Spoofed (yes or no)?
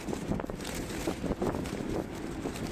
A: yes